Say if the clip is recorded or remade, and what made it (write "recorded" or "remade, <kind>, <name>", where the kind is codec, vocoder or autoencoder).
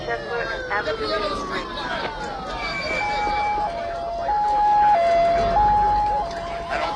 recorded